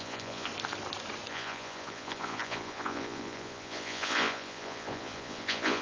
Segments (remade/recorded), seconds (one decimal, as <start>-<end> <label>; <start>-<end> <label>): 0.0-0.5 remade; 0.5-1.3 recorded; 1.3-5.8 remade